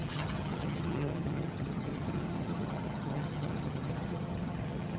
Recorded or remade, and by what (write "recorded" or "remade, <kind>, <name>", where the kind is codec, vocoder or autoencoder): remade, vocoder, HiFi-GAN